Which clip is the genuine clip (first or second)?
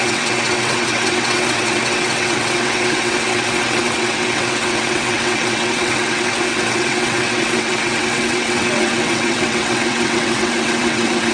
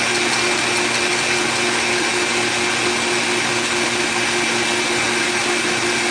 second